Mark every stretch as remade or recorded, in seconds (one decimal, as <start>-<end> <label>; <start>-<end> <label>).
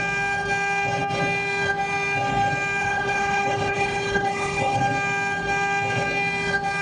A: 0.0-2.8 recorded; 2.8-4.8 remade; 4.8-6.8 recorded